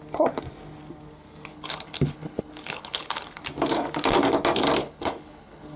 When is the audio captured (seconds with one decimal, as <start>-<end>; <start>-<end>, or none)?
0.0-1.5; 3.4-4.8